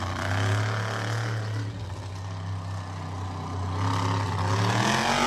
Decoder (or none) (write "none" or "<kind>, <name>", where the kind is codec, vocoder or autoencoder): none